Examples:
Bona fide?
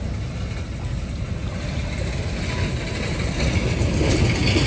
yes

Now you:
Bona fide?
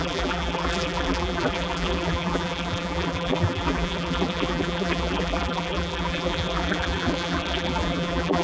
no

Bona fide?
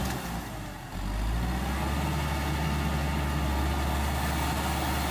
yes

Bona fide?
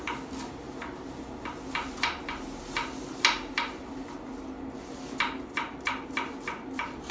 yes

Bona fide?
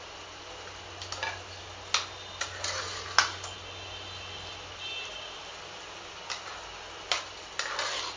yes